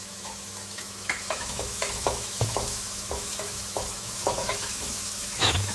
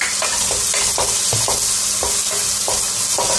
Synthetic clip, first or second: first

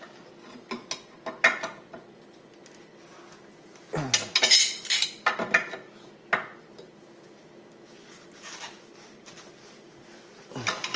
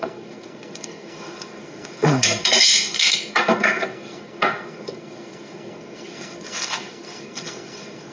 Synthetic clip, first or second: second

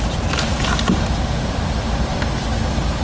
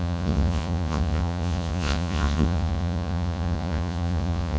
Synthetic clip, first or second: second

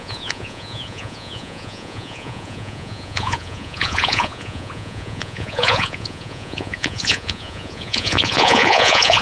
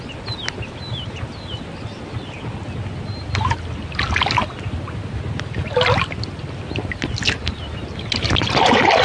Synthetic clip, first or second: first